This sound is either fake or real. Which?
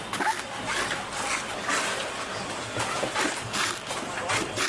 real